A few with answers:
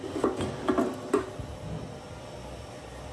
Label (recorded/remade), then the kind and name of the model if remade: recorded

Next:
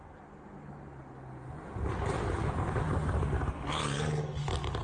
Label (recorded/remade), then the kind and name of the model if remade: recorded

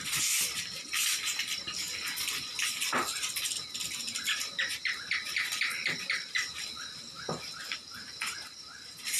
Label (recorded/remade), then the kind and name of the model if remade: recorded